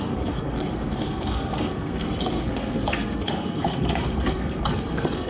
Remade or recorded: remade